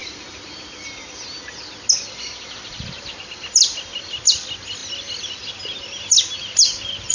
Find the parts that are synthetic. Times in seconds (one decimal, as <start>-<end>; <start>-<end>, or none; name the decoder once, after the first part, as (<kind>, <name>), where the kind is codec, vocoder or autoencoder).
none